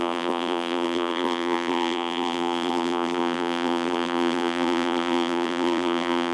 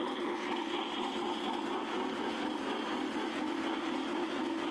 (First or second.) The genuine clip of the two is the second